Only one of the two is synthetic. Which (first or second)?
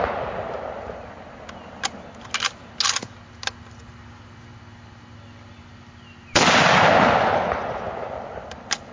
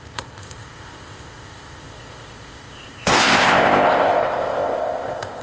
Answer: second